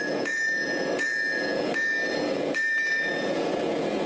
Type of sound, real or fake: fake